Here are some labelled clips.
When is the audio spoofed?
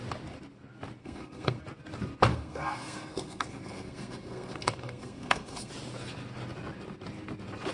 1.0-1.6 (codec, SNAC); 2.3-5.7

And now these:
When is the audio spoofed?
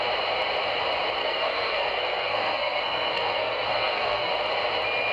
1.2-4.3 (codec, SNAC)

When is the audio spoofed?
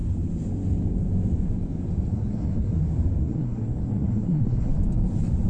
2.1-2.8 (codec, SNAC); 3.2-4.7